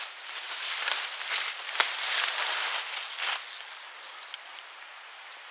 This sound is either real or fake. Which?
real